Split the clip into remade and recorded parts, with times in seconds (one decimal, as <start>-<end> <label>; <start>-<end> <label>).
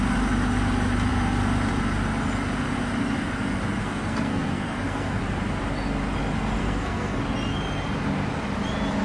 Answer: 0.0-3.8 recorded; 3.8-5.2 remade; 5.2-6.6 recorded; 6.6-7.2 remade; 7.2-9.0 recorded